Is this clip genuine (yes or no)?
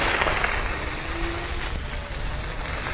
yes